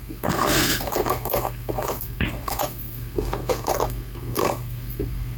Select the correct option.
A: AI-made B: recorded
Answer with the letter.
A